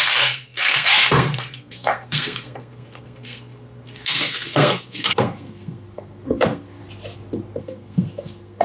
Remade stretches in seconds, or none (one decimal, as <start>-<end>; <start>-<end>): 0.0-6.8; 7.6-8.6